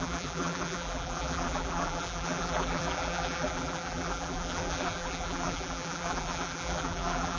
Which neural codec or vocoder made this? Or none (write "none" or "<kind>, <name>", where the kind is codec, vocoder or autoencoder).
vocoder, BigVGAN v2